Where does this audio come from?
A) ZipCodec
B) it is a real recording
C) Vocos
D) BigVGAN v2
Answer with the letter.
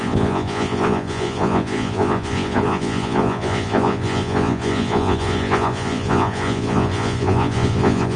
C